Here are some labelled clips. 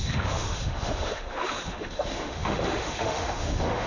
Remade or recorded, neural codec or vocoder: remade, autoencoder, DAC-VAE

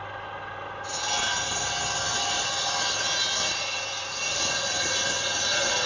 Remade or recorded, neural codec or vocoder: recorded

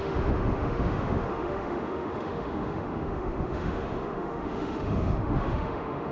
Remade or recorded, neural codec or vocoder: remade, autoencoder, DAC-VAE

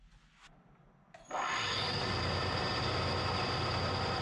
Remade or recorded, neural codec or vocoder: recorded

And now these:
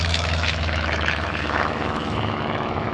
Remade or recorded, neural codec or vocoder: remade, autoencoder, DAC-VAE